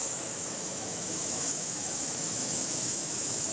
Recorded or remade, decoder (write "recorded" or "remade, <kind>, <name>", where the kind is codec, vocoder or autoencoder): remade, autoencoder, DAC-VAE